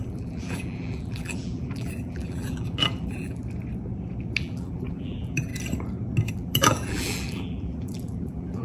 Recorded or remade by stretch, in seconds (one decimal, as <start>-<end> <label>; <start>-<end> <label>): 0.0-3.4 remade; 3.4-4.4 recorded; 4.4-5.5 remade; 5.5-6.3 recorded; 6.3-8.6 remade